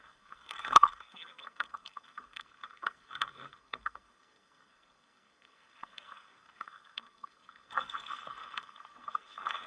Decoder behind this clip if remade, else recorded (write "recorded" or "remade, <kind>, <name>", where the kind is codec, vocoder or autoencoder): remade, codec, SNAC